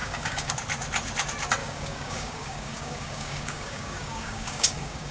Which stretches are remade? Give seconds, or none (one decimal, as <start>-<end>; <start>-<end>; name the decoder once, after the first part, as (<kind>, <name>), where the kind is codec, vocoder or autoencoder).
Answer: 0.0-0.5 (codec, DAC); 1.6-5.1